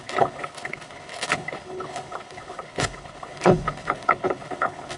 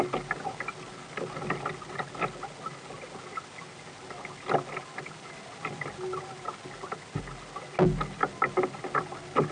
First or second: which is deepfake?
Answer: first